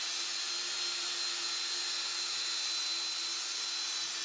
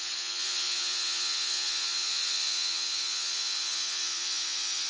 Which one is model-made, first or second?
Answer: second